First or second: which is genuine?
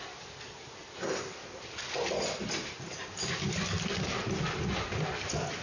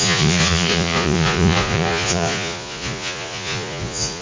first